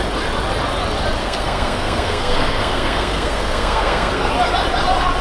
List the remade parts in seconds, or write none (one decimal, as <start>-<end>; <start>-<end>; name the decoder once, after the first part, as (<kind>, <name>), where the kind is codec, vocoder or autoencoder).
1.2-4.3 (codec, SNAC)